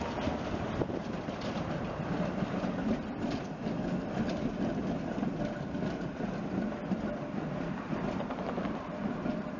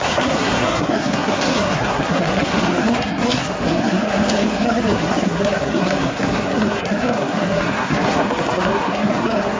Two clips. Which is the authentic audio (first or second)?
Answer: first